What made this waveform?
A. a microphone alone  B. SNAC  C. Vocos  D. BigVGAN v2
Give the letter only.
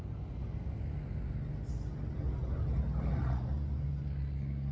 A